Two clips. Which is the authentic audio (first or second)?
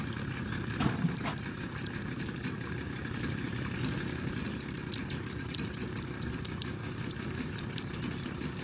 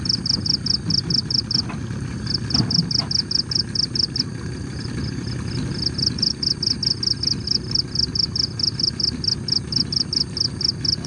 second